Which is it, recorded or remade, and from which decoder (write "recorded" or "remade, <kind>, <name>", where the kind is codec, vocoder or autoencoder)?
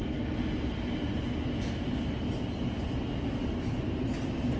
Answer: recorded